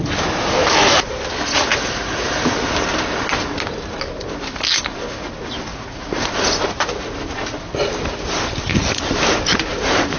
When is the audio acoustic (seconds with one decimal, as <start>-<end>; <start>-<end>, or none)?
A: 0.0-1.7; 2.4-5.7; 6.3-10.2